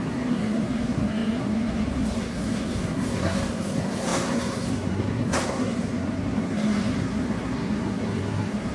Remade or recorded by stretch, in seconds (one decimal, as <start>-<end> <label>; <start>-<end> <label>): 0.0-8.7 remade